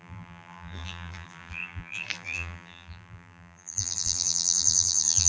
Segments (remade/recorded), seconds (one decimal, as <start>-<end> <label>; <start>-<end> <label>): 0.0-5.3 remade